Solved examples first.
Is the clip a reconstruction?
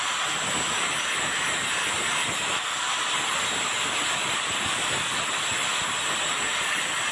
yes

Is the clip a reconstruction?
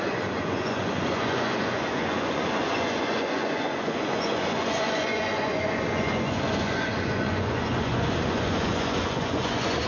yes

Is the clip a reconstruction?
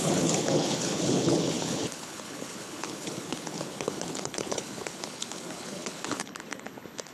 yes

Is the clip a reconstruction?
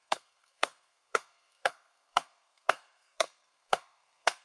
yes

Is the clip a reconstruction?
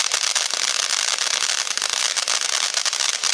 no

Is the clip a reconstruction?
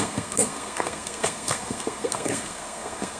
yes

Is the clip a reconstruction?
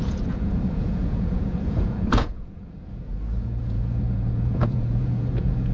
yes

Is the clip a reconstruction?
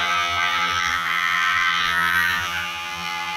yes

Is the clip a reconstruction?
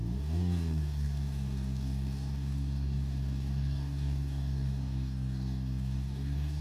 yes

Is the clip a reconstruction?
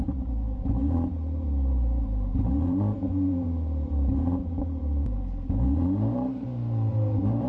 yes